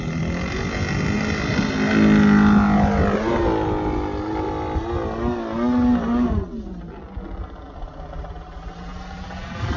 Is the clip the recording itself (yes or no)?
yes